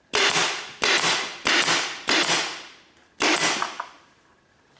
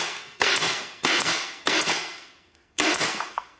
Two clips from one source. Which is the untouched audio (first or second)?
first